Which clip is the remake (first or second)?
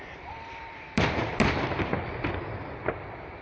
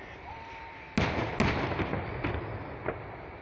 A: first